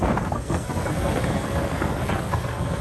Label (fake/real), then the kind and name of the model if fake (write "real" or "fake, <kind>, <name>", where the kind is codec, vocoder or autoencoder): fake, codec, SNAC